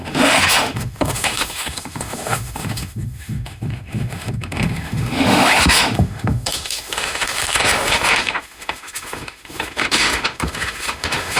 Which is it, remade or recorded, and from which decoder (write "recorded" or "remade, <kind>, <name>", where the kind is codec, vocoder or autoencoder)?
remade, autoencoder, DAC-VAE